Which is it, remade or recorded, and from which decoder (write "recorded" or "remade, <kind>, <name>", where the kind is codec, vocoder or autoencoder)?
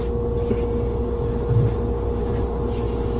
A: recorded